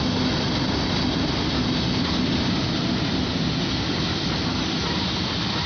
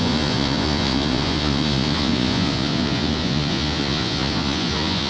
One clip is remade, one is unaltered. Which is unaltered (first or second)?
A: first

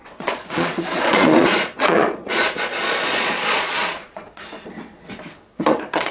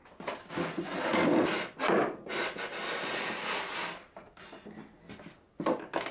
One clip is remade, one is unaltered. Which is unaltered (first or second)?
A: second